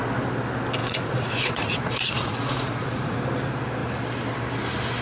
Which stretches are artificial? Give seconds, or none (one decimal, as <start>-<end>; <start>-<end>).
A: 0.8-3.1